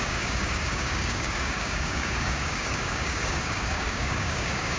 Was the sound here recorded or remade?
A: remade